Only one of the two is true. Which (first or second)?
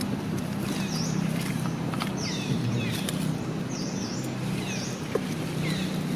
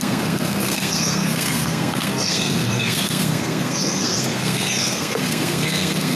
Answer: first